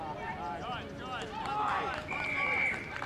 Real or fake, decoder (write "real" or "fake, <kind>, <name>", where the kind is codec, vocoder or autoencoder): real